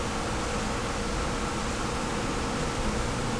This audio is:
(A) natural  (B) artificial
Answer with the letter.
A